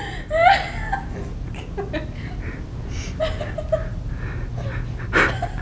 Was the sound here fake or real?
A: real